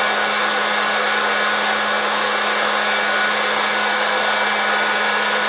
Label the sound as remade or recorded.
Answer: recorded